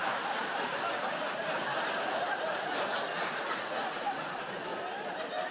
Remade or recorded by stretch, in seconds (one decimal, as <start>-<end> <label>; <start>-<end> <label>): 0.0-3.3 recorded; 3.3-4.7 remade; 4.7-5.5 recorded

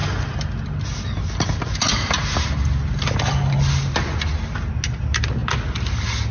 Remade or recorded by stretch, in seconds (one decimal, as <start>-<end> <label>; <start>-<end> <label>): 0.0-6.3 recorded

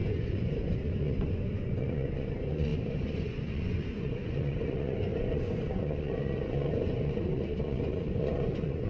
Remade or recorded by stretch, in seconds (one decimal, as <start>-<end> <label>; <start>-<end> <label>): 0.0-8.9 remade

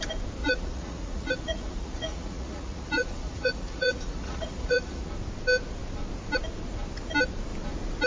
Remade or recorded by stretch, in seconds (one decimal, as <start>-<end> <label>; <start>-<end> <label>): 0.0-0.4 recorded; 0.4-5.1 remade; 5.1-8.1 recorded

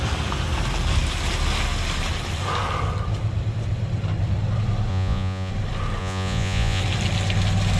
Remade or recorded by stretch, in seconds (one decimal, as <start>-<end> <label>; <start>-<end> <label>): 0.0-4.9 recorded; 4.9-5.5 remade; 5.5-6.0 recorded; 6.0-6.8 remade; 6.8-7.8 recorded

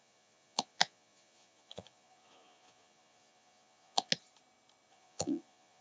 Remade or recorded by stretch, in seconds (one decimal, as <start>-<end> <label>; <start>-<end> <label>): 0.0-4.1 remade; 4.1-4.9 recorded; 4.9-5.8 remade

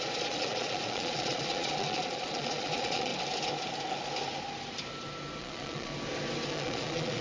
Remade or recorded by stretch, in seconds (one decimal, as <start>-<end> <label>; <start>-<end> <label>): 0.0-3.1 remade; 3.1-5.4 recorded; 5.4-5.9 remade; 5.9-6.5 recorded; 6.5-7.2 remade

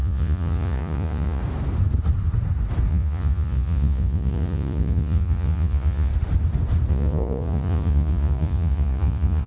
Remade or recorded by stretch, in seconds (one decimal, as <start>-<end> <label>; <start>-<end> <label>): 0.0-1.4 remade; 1.4-2.9 recorded; 2.9-6.1 remade; 6.1-6.9 recorded; 6.9-9.5 remade